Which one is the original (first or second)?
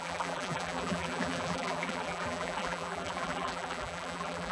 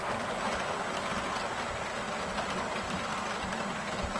second